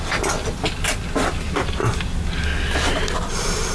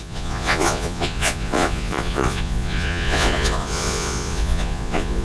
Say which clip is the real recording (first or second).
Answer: first